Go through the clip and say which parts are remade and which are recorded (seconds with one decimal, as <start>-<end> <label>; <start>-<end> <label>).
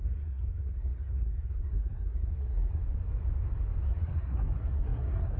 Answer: 0.0-2.8 remade; 2.8-3.8 recorded; 3.8-5.4 remade